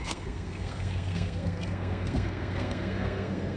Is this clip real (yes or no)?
no